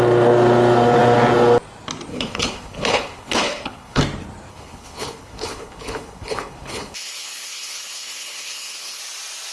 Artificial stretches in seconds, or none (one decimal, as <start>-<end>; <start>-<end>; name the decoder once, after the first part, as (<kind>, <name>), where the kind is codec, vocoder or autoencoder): 2.1-4.0 (codec, HILCodec); 4.5-9.0